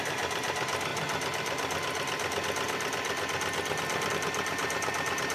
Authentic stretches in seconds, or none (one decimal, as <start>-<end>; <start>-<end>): 0.9-4.1